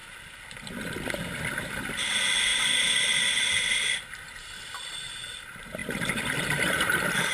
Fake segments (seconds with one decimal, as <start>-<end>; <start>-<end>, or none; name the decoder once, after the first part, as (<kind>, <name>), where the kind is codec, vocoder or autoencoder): 0.0-0.5 (vocoder, BigVGAN v2); 2.5-5.1; 5.8-6.7